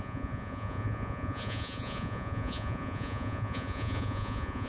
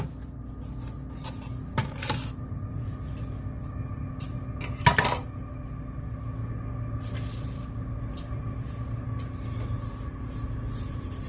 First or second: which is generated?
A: first